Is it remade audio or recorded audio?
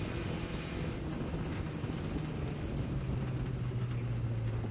recorded